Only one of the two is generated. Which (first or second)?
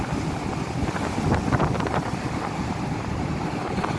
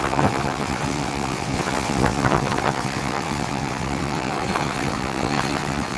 second